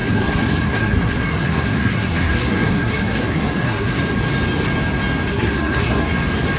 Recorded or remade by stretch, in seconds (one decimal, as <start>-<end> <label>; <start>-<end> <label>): 0.0-4.0 remade; 4.0-5.3 recorded; 5.3-6.1 remade; 6.1-6.6 recorded